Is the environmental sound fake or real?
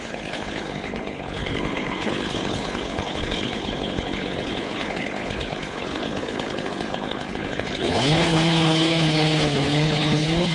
fake